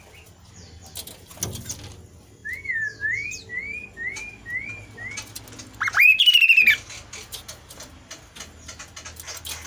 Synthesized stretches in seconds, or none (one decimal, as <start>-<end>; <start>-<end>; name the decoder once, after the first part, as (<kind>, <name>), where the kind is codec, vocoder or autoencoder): none